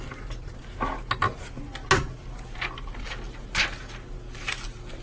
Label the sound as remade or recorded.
recorded